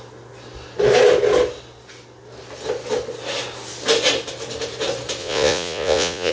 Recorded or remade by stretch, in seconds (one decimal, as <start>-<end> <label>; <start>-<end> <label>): 0.0-5.2 recorded; 5.2-6.3 remade